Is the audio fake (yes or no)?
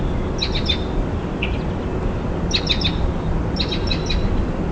no